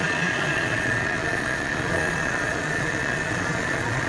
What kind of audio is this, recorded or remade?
remade